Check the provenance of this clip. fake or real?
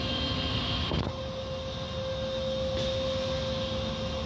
real